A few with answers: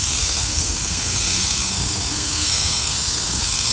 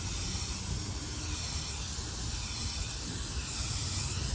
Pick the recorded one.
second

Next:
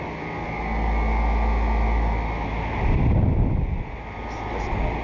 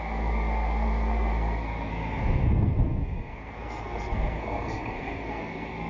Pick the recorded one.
first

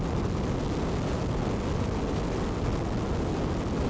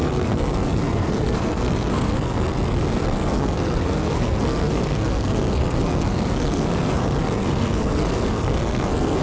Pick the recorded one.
first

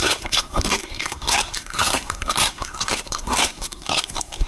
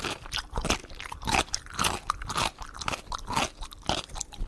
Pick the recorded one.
second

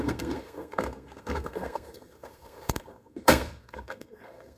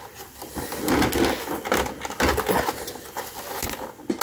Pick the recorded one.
second